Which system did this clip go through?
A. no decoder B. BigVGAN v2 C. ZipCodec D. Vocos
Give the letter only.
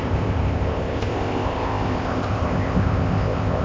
C